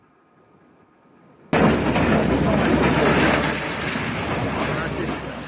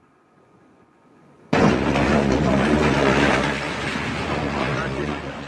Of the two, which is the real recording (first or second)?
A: first